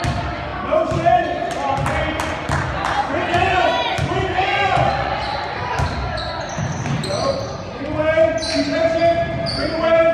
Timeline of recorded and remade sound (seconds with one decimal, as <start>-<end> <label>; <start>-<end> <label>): 0.0-4.1 recorded; 4.1-5.2 remade; 5.2-10.1 recorded